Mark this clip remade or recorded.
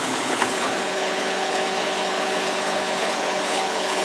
remade